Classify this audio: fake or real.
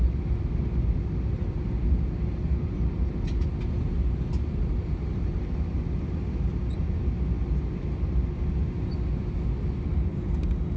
real